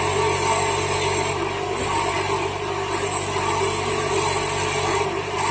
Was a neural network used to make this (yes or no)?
no